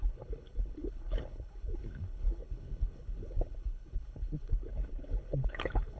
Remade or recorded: remade